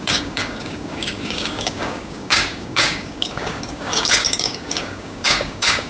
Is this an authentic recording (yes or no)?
no